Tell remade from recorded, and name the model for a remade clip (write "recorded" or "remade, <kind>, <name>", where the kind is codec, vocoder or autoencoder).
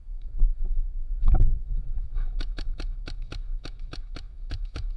remade, autoencoder, DAC-VAE